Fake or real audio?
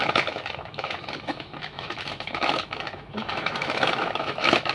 fake